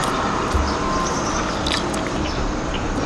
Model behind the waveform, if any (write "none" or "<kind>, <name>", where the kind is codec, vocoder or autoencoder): none